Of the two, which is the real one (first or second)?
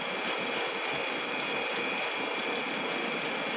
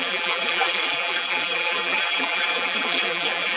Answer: first